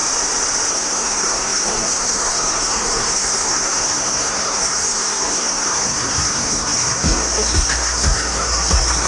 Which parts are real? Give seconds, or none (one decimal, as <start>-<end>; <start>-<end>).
0.0-0.7